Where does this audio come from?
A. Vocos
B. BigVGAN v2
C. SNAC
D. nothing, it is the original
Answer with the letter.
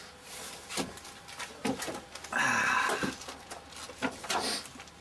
D